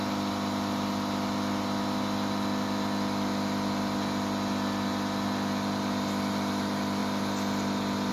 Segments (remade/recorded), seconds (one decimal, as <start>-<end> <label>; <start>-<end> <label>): 0.0-8.1 recorded